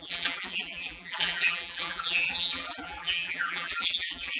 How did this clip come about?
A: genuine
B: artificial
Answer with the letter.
B